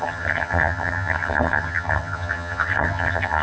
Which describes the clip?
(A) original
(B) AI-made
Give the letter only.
B